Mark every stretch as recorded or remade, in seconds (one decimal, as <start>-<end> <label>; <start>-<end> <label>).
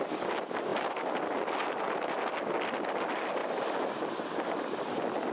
0.0-5.3 recorded